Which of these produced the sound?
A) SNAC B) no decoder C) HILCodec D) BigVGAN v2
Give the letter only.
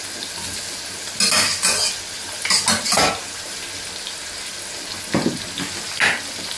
B